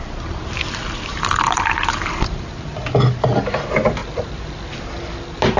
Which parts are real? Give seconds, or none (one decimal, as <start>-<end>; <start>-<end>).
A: 0.0-1.1; 2.5-5.6